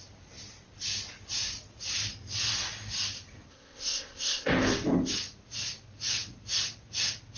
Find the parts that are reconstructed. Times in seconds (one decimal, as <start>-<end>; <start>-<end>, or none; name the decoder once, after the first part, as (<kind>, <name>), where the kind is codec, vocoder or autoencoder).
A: 3.5-4.5 (codec, ZipCodec)